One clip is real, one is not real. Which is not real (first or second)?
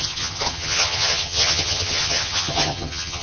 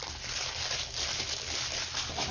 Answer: first